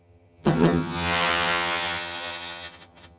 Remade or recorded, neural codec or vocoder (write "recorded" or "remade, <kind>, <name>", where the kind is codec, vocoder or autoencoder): remade, vocoder, HiFi-GAN